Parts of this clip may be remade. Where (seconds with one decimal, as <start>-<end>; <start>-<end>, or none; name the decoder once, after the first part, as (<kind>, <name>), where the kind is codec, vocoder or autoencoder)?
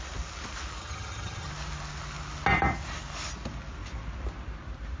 0.8-1.5 (vocoder, HiFi-GAN)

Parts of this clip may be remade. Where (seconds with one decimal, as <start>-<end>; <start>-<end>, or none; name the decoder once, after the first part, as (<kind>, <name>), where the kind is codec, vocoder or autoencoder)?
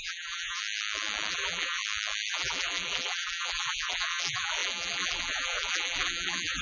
0.0-0.6 (vocoder, BigVGAN v2); 1.3-1.8; 2.3-6.6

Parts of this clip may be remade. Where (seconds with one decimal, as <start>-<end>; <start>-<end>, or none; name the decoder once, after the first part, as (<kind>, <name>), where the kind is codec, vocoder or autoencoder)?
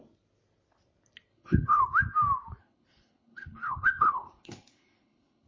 1.3-1.8 (codec, HILCodec); 2.6-5.5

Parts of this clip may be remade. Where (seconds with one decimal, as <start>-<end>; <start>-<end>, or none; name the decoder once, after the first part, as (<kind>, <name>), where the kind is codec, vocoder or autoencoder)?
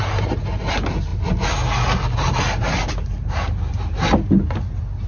none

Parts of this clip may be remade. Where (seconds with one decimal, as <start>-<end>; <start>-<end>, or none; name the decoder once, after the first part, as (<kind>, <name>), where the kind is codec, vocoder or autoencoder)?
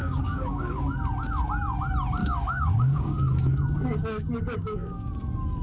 0.0-0.8 (codec, DAC); 2.2-5.1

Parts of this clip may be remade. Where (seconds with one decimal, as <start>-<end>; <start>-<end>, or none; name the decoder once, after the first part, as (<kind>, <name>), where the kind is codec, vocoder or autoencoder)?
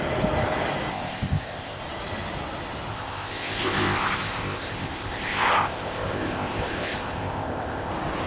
0.9-1.8 (codec, ZipCodec); 2.9-7.9